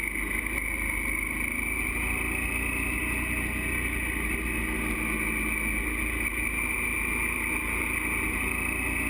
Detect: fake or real real